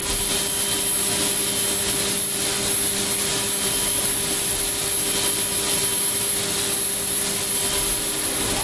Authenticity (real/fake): real